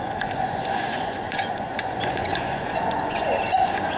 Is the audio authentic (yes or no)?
no